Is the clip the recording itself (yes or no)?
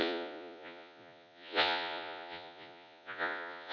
no